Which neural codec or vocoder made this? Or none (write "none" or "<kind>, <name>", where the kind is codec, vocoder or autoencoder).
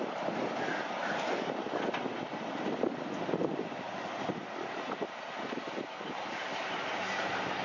none